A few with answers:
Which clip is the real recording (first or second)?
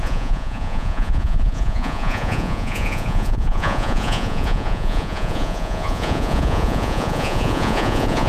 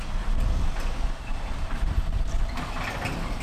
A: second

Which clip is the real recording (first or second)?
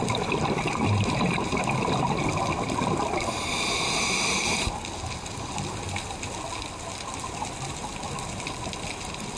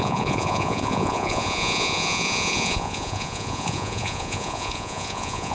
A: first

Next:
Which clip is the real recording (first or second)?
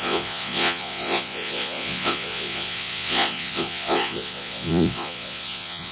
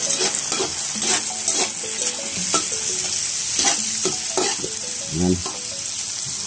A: second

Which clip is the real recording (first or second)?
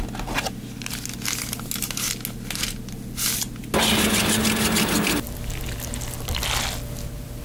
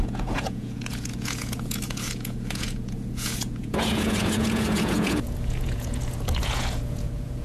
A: first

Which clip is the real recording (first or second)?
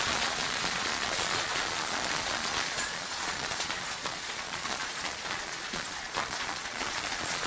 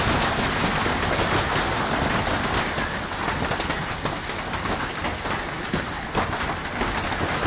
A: second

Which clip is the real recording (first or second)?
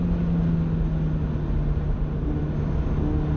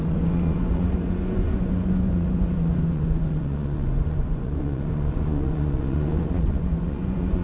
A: first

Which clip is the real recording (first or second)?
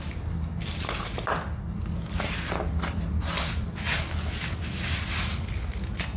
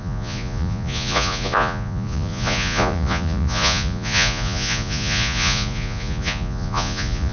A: first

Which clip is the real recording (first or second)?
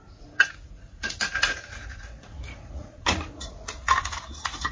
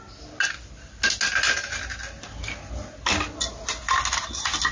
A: second